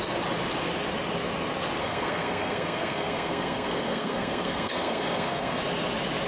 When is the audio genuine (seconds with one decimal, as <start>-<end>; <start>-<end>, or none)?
0.0-1.8; 5.6-6.3